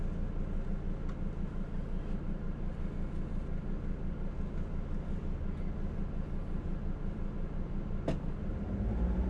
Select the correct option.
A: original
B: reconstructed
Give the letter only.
A